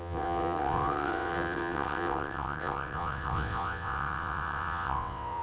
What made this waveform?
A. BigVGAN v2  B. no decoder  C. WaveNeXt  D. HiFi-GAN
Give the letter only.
C